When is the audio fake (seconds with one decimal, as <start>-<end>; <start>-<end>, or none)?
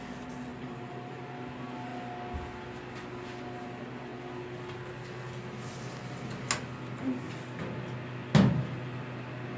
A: 0.5-1.2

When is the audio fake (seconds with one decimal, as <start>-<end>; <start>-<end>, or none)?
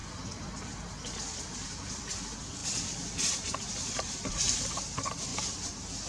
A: 0.0-5.3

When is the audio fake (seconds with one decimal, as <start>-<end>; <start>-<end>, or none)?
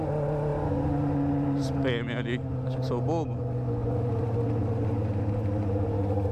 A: none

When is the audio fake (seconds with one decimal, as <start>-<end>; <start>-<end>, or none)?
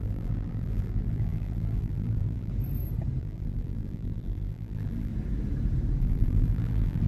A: 0.0-2.5; 3.2-5.1; 6.0-7.1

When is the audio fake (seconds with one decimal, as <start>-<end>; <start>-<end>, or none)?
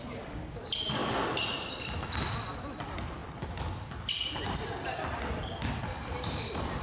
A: 0.0-1.0; 2.1-3.2; 4.1-6.8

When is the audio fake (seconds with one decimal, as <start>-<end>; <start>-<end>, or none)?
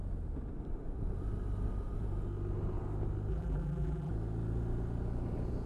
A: 3.3-4.1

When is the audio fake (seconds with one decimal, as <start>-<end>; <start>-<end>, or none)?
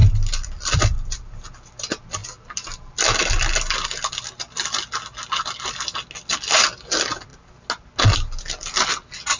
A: 0.0-1.3; 2.2-2.7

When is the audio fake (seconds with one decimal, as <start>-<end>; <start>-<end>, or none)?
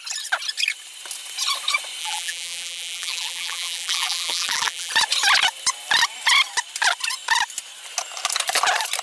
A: 2.0-4.9